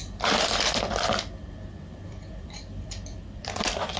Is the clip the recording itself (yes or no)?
no